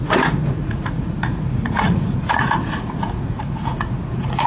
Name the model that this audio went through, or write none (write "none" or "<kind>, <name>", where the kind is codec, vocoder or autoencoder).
vocoder, Vocos